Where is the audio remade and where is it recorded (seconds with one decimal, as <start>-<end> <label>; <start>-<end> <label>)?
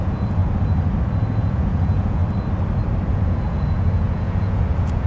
0.0-0.4 remade; 0.4-1.3 recorded; 1.3-2.2 remade; 2.2-3.1 recorded; 3.1-5.1 remade